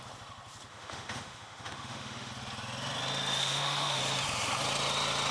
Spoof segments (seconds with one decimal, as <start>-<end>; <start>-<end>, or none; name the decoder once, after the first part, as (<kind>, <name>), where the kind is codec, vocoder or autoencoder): 0.7-2.3 (autoencoder, DAC-VAE); 3.4-4.0